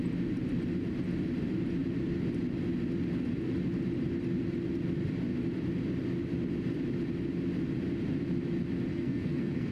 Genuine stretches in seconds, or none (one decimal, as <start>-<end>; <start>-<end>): 0.0-8.9